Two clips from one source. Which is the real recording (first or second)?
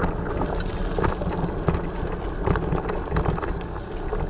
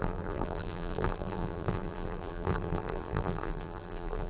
first